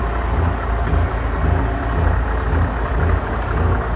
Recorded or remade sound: recorded